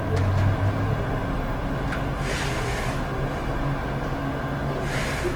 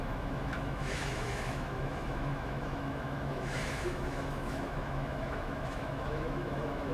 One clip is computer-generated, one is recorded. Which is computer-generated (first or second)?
second